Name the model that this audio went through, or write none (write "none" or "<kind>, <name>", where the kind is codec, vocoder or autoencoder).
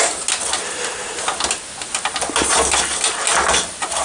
none